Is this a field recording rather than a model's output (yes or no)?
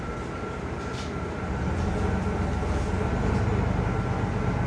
yes